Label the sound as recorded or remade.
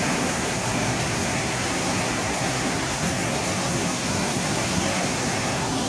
remade